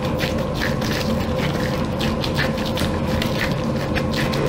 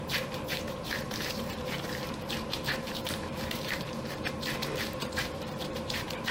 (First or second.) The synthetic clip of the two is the second